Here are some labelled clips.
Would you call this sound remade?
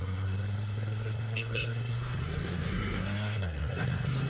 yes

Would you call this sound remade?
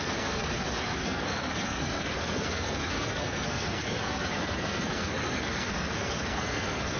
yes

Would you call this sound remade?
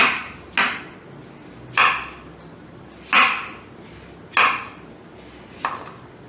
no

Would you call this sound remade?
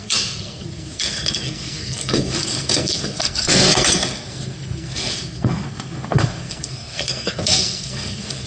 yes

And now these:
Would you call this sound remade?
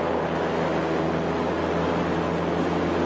no